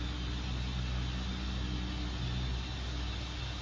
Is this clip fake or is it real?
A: real